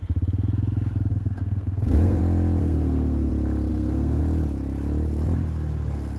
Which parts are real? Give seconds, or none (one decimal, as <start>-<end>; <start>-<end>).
0.0-1.1; 2.2-2.6; 3.3-3.7; 4.2-6.2